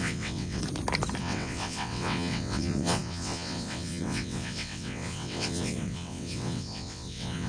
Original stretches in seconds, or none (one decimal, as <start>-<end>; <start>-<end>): 0.6-1.2